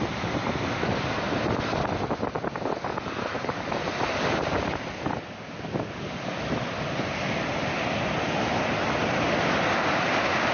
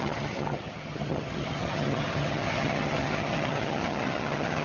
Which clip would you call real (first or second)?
first